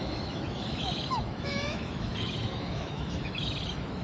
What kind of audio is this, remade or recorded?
remade